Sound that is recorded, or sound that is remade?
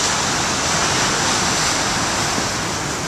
recorded